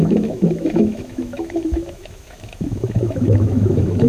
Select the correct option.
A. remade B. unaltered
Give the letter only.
A